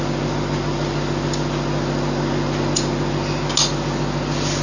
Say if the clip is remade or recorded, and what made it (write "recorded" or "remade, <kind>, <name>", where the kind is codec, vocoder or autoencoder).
recorded